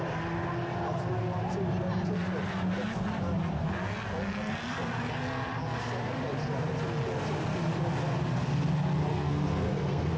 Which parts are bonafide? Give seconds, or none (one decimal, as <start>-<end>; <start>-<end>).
0.0-9.1